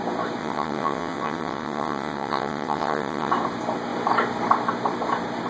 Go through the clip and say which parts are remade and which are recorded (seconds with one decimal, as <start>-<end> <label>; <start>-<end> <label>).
0.0-0.4 recorded; 0.4-3.3 remade; 3.3-5.5 recorded